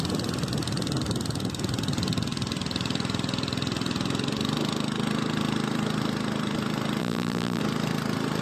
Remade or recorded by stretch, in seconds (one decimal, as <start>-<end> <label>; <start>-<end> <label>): 0.0-7.0 recorded; 7.0-7.6 remade; 7.6-8.4 recorded